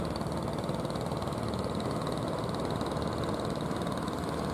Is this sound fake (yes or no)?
no